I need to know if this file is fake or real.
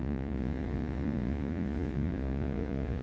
fake